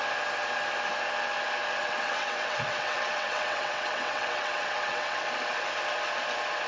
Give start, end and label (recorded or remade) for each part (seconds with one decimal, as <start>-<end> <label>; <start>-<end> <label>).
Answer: 0.0-1.8 recorded; 1.8-5.2 remade; 5.2-6.7 recorded